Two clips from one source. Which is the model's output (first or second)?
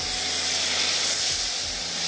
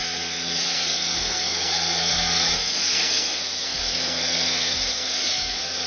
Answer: second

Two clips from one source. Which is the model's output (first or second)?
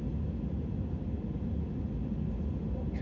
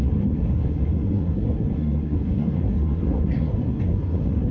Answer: second